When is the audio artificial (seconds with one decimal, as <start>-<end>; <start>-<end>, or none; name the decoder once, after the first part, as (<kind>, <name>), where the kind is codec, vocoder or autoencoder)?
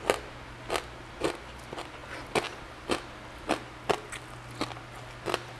none